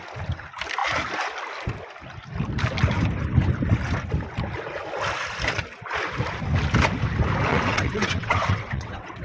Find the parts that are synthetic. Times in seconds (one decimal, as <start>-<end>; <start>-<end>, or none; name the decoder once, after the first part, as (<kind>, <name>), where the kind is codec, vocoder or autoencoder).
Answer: 7.5-9.2 (vocoder, WaveNeXt)